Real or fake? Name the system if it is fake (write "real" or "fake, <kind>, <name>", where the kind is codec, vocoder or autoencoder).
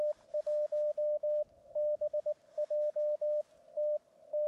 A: real